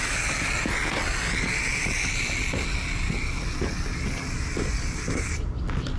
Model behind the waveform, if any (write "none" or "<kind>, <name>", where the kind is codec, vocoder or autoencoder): none